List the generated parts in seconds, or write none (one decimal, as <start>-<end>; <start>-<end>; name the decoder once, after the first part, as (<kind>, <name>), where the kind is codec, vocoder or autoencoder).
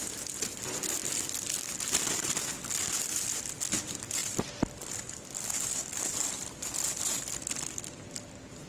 none